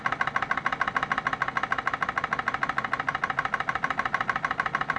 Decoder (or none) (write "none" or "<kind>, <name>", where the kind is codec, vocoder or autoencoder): none